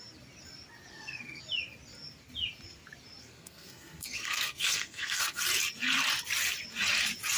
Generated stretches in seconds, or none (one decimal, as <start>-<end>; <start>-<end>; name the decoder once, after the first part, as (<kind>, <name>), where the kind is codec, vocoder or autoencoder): 0.9-1.4 (codec, SNAC); 3.2-5.4

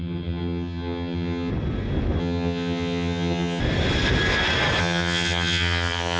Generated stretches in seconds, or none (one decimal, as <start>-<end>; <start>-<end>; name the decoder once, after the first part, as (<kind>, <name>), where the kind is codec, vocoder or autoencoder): 0.0-1.5 (vocoder, HiFi-GAN); 2.2-3.6; 4.8-6.2

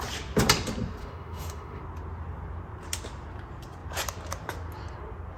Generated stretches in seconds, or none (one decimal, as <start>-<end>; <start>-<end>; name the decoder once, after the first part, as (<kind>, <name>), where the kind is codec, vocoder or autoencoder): 1.0-1.8 (autoencoder, DAC-VAE)